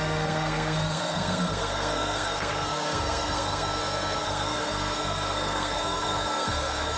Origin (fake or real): fake